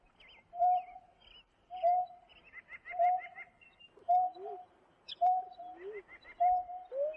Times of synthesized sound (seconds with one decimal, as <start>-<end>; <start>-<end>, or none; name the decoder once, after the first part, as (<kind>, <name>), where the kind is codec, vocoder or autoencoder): none